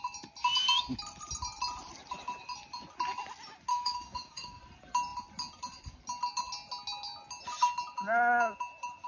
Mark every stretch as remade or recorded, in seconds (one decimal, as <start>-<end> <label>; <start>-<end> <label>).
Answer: 0.0-3.7 recorded; 3.7-4.6 remade; 4.6-9.1 recorded